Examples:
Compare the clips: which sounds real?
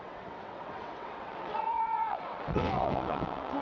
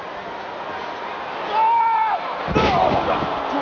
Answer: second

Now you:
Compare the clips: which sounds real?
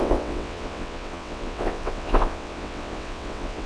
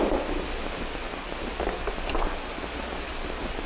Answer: second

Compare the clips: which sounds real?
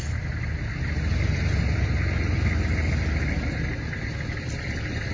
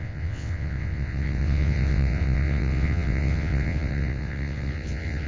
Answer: first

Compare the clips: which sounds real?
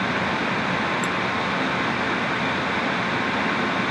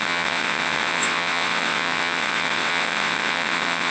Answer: first